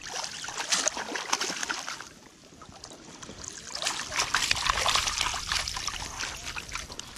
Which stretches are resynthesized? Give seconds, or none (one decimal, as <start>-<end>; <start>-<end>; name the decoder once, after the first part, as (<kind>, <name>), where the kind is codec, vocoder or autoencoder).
0.0-1.6 (vocoder, BigVGAN v2); 2.5-5.3; 6.7-7.2